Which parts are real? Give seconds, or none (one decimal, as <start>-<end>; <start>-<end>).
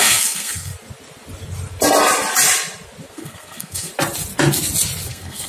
0.7-3.1; 3.9-5.1